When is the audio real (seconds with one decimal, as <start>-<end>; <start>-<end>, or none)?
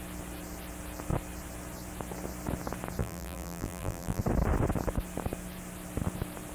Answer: 0.0-3.0; 4.2-6.5